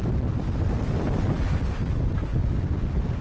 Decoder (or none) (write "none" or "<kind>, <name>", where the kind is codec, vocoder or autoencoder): vocoder, BigVGAN v2